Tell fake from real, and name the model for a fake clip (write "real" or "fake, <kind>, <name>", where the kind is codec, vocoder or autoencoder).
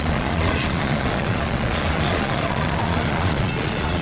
fake, vocoder, Vocos